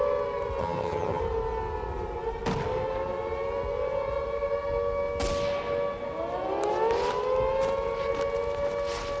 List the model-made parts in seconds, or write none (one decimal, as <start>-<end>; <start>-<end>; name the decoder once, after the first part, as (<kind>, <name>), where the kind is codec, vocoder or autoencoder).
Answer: 0.6-1.2 (vocoder, HiFi-GAN)